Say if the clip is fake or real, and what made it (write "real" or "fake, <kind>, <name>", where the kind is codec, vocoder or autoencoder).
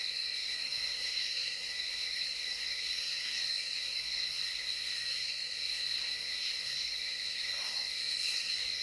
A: fake, codec, SNAC